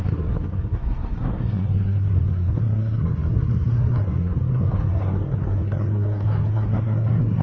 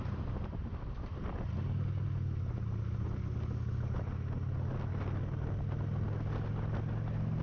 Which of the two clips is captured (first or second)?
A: second